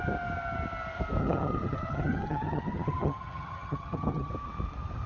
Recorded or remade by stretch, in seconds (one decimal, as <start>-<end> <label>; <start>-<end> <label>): 0.0-1.2 recorded; 1.2-4.3 remade; 4.3-5.1 recorded